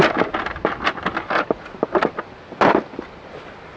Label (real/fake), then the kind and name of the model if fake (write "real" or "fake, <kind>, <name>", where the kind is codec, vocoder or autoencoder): real